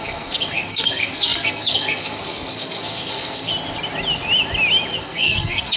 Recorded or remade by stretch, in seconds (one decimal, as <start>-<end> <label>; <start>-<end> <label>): 0.0-3.5 remade; 3.5-5.0 recorded; 5.0-5.8 remade